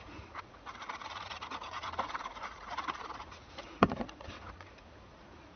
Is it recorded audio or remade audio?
remade